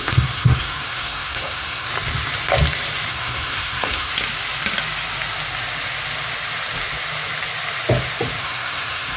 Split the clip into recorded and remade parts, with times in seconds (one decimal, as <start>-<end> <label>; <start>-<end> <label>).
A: 0.0-1.9 remade; 1.9-3.1 recorded; 3.1-4.1 remade; 4.1-8.4 recorded; 8.4-9.2 remade